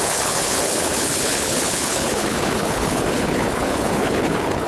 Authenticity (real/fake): fake